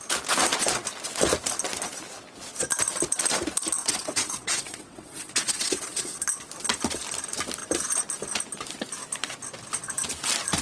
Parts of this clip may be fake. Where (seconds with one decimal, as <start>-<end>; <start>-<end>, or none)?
3.8-6.2